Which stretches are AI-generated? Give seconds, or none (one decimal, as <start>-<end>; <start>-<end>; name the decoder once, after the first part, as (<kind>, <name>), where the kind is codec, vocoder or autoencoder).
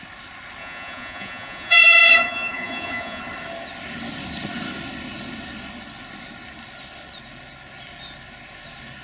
0.6-3.2 (vocoder, Vocos)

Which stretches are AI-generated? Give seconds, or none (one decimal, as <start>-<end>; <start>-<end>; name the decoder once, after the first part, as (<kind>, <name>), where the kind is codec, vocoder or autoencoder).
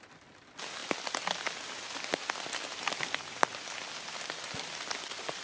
none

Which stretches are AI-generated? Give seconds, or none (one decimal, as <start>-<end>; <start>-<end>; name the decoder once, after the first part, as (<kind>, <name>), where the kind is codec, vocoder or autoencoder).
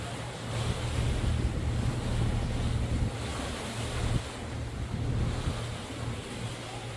none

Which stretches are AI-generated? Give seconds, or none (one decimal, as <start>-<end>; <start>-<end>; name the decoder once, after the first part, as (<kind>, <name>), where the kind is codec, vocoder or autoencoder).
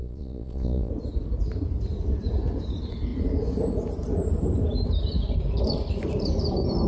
0.0-0.9 (vocoder, Vocos)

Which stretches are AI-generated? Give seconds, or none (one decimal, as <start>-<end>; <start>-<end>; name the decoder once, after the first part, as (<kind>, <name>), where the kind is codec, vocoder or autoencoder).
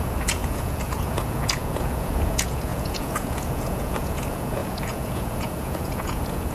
0.0-6.5 (vocoder, Vocos)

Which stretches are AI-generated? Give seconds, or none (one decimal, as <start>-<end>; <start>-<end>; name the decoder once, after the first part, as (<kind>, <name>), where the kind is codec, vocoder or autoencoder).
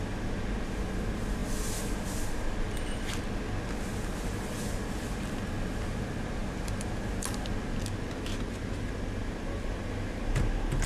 none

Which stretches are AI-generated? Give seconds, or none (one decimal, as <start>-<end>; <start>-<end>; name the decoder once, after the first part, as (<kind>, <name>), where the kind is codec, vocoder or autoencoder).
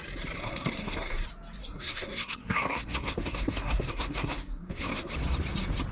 0.4-1.2 (codec, SNAC); 1.6-5.1